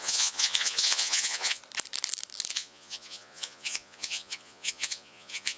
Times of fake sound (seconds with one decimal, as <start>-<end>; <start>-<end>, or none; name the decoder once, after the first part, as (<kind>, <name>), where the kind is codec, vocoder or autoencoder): 0.0-1.6 (vocoder, Vocos); 2.5-5.6